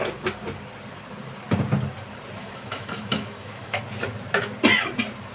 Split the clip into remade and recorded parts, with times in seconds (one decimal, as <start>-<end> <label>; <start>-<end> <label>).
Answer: 0.0-2.4 recorded; 2.4-3.8 remade; 3.8-5.3 recorded